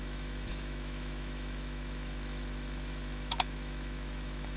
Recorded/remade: remade